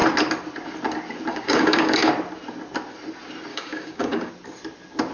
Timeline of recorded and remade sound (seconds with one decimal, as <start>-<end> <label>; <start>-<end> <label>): 0.0-1.3 recorded; 1.3-2.1 remade; 2.1-3.5 recorded; 3.5-4.3 remade; 4.3-5.1 recorded